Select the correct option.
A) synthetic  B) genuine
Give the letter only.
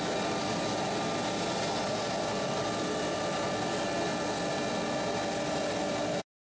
B